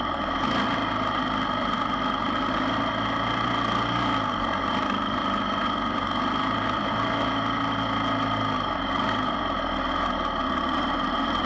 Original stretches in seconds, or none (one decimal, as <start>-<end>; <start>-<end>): 0.0-11.5